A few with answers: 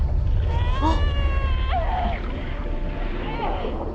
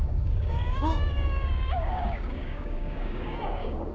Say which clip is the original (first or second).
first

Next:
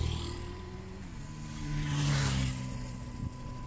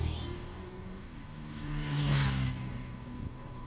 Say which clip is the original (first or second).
first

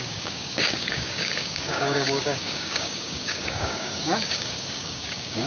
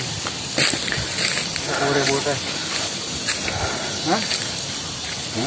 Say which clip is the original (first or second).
second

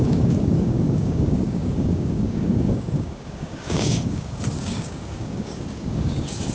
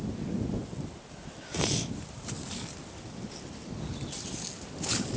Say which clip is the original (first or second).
second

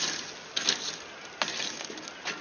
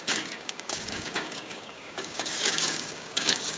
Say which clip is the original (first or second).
first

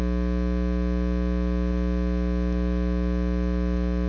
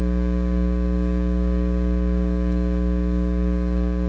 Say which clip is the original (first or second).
first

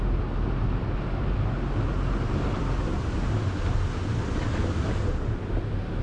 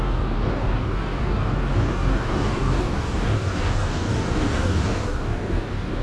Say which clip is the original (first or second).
first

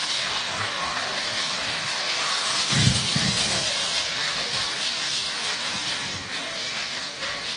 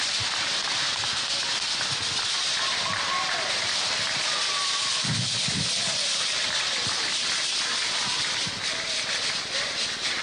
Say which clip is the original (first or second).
second